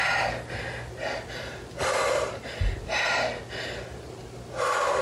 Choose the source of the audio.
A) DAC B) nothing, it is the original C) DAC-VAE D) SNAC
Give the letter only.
B